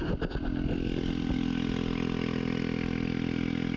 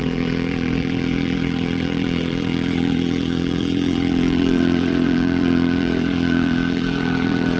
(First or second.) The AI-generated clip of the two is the second